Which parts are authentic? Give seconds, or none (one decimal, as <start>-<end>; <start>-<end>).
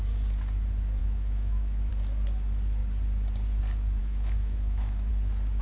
0.0-1.0; 1.9-4.0; 5.1-5.6